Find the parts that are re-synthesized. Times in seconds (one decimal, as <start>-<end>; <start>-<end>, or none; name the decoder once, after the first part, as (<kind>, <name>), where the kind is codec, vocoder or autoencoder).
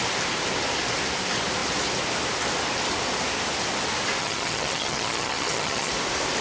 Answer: 4.2-5.9 (vocoder, HiFi-GAN)